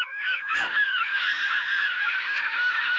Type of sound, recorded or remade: remade